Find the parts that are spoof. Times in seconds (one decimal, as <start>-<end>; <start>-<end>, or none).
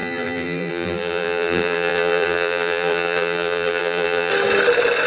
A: 0.0-4.3